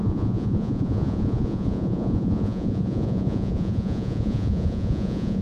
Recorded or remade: remade